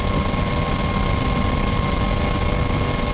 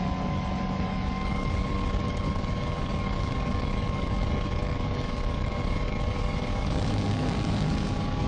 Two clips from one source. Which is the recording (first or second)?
first